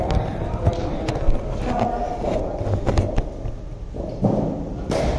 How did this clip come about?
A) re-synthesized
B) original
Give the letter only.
B